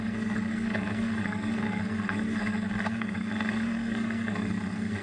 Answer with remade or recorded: remade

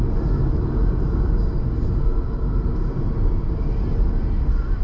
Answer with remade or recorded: recorded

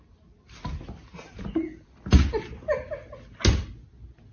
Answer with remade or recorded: recorded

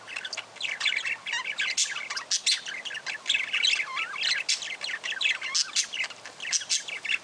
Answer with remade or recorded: recorded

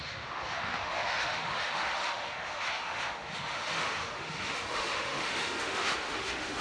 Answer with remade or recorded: remade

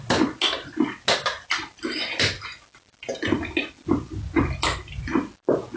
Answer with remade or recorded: recorded